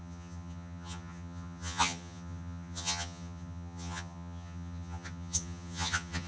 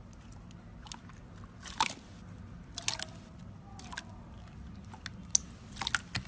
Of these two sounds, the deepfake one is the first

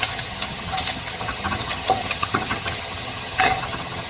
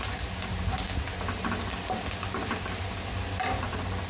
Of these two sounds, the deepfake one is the first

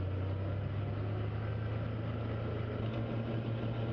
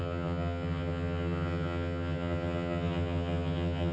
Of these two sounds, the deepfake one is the second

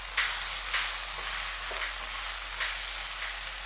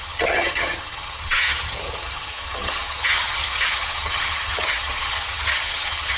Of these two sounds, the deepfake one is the second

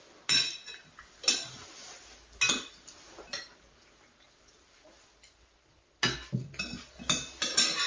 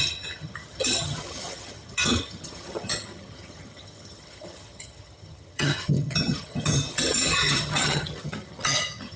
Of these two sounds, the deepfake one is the second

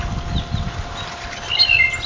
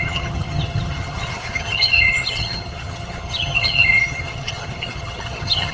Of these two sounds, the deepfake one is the second